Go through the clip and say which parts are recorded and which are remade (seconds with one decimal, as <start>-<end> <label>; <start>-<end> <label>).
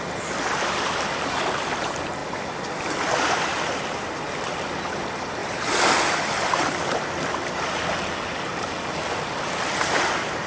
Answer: 0.0-2.2 recorded; 2.2-4.1 remade; 4.1-5.4 recorded; 5.4-7.7 remade; 7.7-10.5 recorded